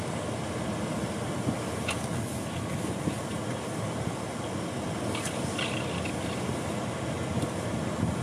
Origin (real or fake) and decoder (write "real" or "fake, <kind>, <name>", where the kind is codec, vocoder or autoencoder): real